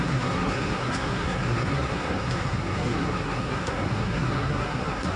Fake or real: fake